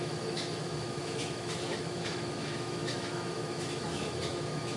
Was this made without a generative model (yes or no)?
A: no